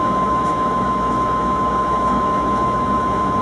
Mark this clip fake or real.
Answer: fake